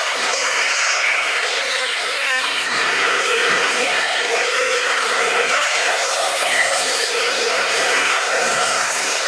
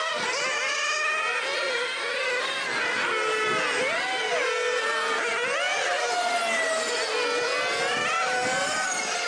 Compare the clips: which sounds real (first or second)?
second